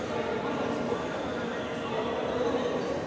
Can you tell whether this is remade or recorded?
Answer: recorded